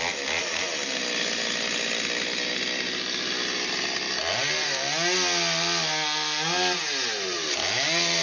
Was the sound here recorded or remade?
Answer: recorded